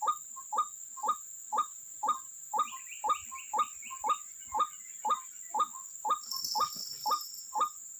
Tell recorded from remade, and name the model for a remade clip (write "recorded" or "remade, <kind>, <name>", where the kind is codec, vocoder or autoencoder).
recorded